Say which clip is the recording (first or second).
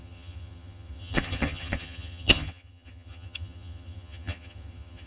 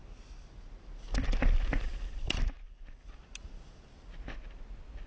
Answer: second